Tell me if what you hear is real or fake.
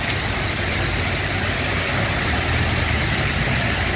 real